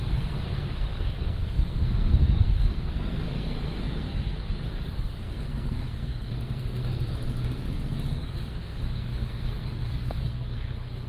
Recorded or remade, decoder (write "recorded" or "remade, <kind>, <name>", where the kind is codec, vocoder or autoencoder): remade, codec, SNAC